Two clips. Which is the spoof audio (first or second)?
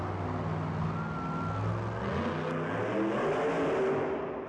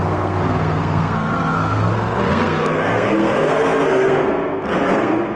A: second